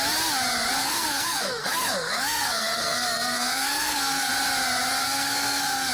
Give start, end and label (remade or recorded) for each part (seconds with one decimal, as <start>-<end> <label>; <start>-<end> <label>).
0.0-0.8 recorded; 0.8-4.3 remade; 4.3-5.0 recorded; 5.0-5.9 remade

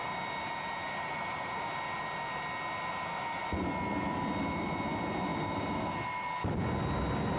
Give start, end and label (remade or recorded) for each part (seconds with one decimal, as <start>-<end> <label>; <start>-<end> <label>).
0.0-5.3 recorded; 5.3-6.6 remade; 6.6-7.4 recorded